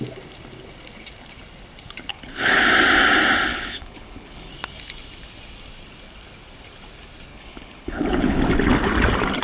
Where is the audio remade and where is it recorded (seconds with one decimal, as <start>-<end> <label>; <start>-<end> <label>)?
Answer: 0.0-2.1 recorded; 2.1-2.6 remade; 2.6-3.5 recorded; 3.5-4.5 remade; 4.5-7.3 recorded; 7.3-8.4 remade; 8.4-9.4 recorded